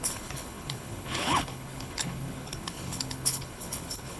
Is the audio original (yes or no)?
no